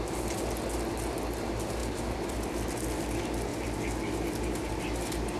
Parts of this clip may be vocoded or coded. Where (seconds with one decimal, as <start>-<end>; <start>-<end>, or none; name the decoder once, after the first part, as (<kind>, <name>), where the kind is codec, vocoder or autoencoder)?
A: 1.8-3.0 (vocoder, BigVGAN v2); 3.5-4.7